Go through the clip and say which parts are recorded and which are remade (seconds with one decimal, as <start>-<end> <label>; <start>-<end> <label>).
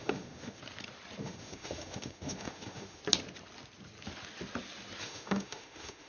0.0-0.6 remade; 0.6-1.2 recorded; 1.2-3.0 remade; 3.0-5.0 recorded; 5.0-6.1 remade